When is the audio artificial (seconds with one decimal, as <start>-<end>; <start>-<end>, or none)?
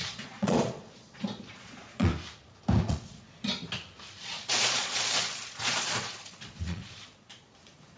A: 0.0-2.1; 2.8-3.5; 4.2-8.0